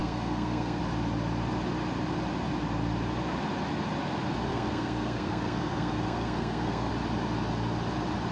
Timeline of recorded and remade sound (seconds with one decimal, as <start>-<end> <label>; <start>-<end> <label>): 0.0-0.8 remade; 0.8-4.5 recorded; 4.5-6.9 remade; 6.9-8.3 recorded